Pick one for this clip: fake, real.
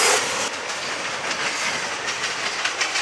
real